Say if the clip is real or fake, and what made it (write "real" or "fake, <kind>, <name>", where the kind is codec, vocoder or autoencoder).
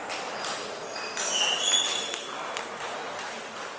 real